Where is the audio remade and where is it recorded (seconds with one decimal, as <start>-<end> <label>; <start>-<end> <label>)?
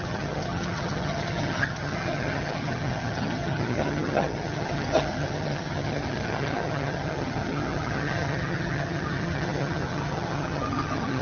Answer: 0.0-11.2 remade